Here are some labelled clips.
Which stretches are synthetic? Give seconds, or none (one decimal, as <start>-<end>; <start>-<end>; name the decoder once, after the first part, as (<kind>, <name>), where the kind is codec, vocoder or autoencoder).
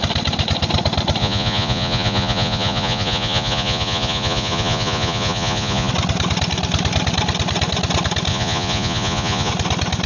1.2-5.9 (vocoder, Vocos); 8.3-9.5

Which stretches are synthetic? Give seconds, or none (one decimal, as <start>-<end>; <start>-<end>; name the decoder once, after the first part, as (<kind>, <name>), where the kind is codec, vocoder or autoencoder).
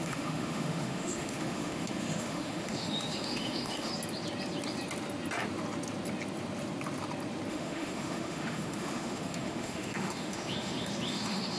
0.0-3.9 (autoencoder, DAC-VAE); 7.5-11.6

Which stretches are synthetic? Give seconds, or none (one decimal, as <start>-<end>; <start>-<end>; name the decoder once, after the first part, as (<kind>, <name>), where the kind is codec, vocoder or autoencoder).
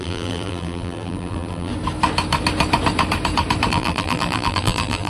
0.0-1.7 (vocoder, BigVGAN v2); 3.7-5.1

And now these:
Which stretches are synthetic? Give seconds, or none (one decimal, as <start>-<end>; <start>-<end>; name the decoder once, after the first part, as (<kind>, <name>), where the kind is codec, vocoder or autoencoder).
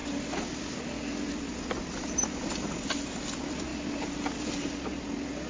none